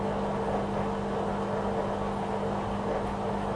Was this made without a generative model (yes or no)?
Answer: yes